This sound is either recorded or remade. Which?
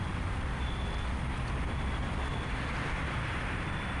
recorded